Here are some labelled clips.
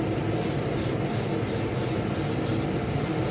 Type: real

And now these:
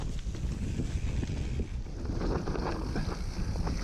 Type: real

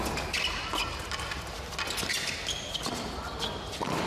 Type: real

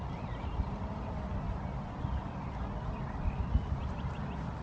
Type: real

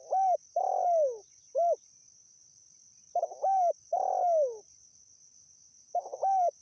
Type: real